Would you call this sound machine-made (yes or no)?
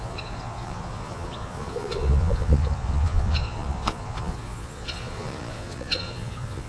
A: yes